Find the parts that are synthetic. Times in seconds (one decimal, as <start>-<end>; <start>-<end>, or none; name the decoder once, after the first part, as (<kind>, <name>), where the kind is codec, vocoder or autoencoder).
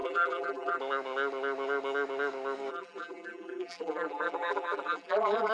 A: 0.0-0.8 (vocoder, BigVGAN v2); 2.7-5.5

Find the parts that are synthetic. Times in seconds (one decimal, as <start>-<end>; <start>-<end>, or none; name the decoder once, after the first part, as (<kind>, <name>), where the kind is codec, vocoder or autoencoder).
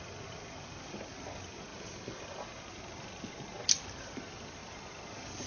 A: none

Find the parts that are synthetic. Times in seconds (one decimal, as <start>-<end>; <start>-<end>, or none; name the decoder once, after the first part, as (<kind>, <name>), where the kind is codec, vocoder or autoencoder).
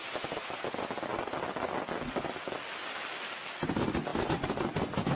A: none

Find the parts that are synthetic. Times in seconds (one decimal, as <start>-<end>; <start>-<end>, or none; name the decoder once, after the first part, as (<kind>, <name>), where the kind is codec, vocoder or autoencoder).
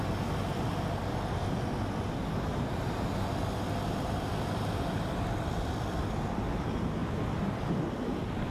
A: 2.5-3.1 (vocoder, BigVGAN v2)